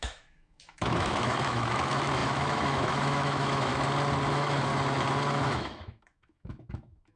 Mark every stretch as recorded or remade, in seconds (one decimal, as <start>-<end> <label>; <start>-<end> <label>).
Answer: 0.0-3.7 remade; 3.7-4.3 recorded; 4.3-4.7 remade; 4.7-5.3 recorded; 5.3-7.2 remade